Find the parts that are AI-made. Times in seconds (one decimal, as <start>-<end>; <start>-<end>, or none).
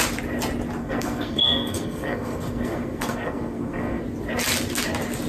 0.8-4.0